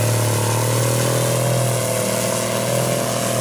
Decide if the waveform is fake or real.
real